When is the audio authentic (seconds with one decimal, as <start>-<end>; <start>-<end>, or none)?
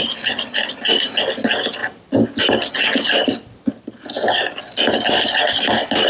0.0-6.1